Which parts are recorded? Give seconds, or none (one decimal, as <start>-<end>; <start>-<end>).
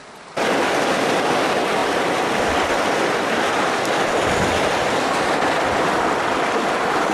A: 0.0-7.1